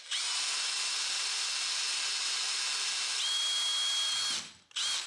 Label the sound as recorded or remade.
recorded